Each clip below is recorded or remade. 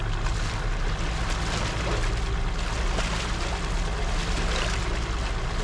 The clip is recorded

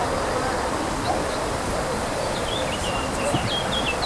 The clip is remade